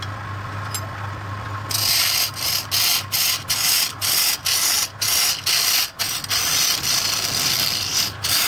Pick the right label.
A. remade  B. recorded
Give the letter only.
B